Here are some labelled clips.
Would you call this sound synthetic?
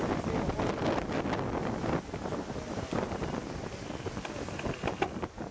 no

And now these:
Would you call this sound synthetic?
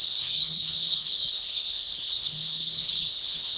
yes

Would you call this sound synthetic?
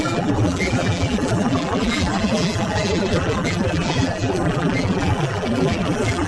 yes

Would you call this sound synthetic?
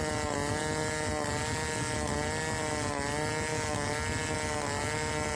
no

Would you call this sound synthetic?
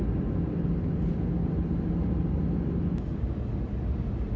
no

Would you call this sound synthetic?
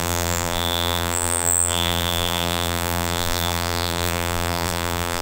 yes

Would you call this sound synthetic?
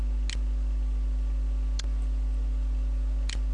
no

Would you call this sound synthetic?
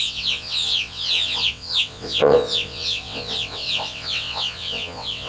yes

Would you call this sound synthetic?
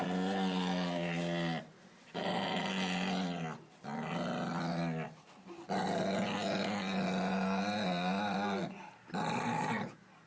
no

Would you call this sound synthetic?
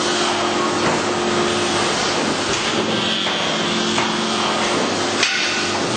no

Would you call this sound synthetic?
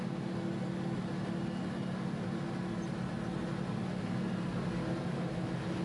no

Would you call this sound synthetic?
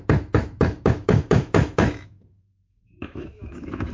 yes